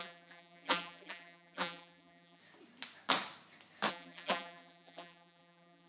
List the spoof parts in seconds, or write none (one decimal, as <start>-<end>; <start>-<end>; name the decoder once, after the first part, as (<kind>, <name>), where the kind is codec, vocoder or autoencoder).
0.0-2.4 (vocoder, BigVGAN v2); 3.9-5.9